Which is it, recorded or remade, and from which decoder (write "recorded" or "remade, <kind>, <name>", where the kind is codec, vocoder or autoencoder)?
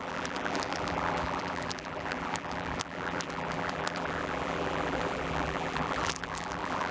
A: remade, vocoder, BigVGAN v2